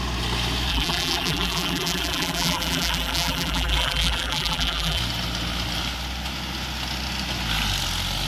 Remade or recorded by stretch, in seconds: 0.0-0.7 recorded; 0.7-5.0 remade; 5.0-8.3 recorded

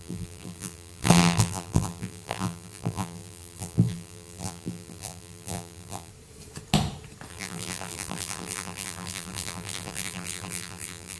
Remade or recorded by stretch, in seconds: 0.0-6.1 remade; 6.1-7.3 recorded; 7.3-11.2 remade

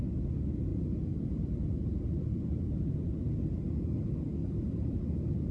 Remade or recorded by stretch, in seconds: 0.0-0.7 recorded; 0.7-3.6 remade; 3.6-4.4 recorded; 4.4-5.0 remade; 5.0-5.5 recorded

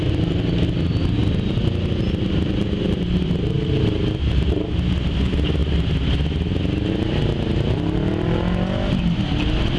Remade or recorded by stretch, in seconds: 0.0-9.8 recorded

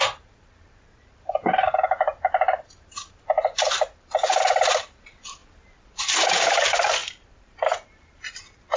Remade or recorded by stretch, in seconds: 0.0-2.1 remade; 2.1-3.3 recorded; 3.3-8.8 remade

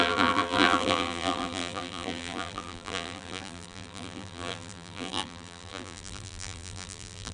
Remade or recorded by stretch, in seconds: 0.0-7.3 remade